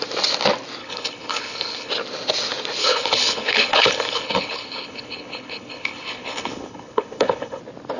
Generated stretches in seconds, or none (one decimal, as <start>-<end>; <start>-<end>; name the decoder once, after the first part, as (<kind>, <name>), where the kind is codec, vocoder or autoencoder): 0.8-1.9 (codec, HILCodec); 2.8-7.6